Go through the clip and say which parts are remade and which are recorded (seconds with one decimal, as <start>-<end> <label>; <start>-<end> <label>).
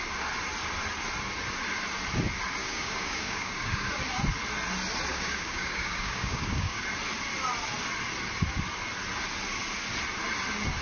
0.0-2.6 recorded; 2.6-3.9 remade; 3.9-5.1 recorded; 5.1-6.8 remade; 6.8-10.8 recorded